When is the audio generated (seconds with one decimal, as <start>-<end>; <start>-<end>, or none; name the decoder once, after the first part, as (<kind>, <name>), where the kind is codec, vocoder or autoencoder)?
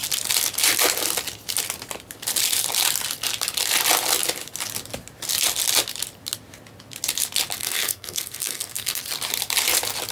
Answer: 7.6-9.0 (codec, SNAC)